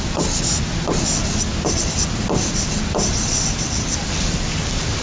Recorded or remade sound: recorded